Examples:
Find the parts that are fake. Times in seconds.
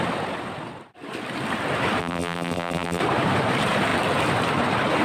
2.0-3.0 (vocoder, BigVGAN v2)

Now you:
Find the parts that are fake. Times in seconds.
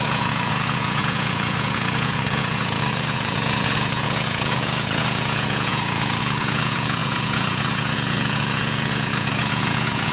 0.0-10.1 (vocoder, Vocos)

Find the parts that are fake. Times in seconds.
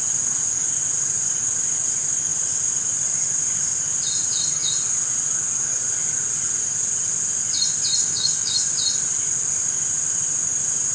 8.0-8.7 (codec, DAC)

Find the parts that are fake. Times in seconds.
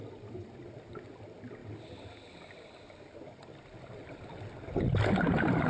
none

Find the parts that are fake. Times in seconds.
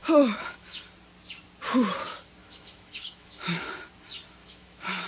0.0-0.8 (autoencoder, DAC-VAE); 2.4-3.7; 4.4-5.1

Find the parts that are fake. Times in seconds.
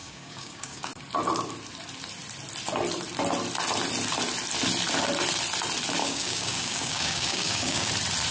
0.0-0.9 (codec, DAC); 6.0-7.9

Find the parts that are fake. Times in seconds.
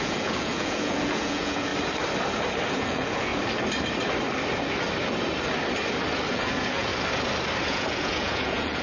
0.0-1.7 (vocoder, Vocos); 2.7-3.3; 6.3-6.9; 7.7-8.8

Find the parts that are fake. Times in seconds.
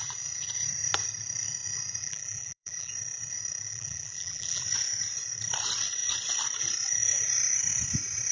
2.0-2.9 (vocoder, BigVGAN v2); 3.7-4.6